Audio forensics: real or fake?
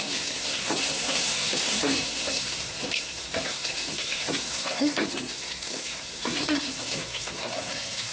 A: fake